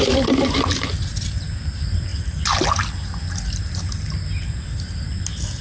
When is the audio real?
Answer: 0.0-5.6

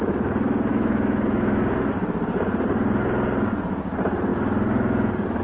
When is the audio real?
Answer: 0.0-0.7; 1.9-5.4

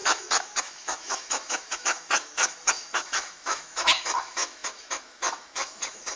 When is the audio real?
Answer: none

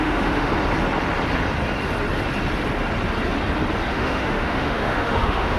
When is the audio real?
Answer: 0.5-3.9

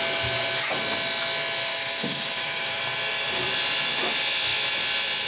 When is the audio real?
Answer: 0.0-1.7; 2.8-5.3

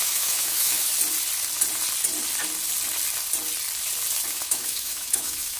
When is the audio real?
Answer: 0.9-4.3

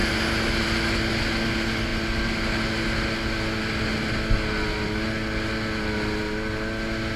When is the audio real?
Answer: 0.0-7.2

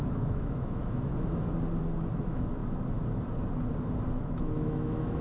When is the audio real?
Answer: 1.1-2.2; 2.6-4.3